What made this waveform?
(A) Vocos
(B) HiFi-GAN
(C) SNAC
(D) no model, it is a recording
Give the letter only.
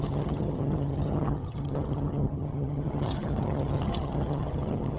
B